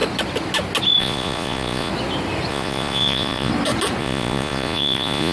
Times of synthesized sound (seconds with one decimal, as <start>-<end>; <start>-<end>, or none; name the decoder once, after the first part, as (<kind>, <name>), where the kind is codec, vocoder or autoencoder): 1.0-1.9 (vocoder, Vocos); 2.5-3.5; 4.0-5.3

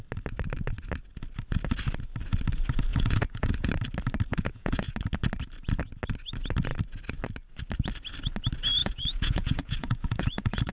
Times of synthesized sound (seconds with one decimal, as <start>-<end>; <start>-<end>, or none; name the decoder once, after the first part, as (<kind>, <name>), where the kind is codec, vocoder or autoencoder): 2.9-3.7 (vocoder, Vocos); 4.3-4.9; 8.8-10.7